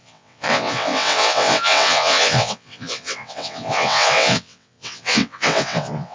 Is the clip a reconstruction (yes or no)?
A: yes